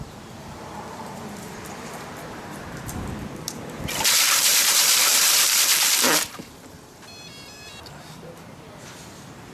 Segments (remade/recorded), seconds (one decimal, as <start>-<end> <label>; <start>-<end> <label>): 0.0-9.5 remade